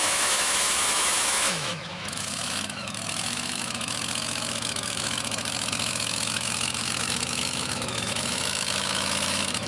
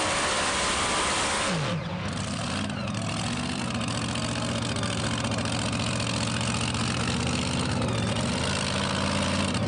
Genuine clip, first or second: second